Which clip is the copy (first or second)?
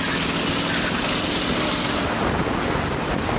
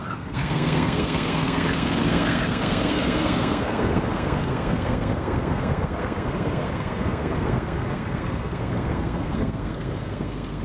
second